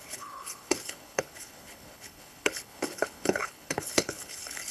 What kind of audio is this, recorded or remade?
remade